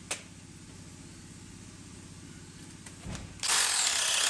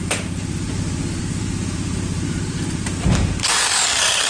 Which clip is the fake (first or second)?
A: second